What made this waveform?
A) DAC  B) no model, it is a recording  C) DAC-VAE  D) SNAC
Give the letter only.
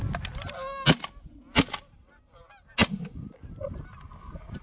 B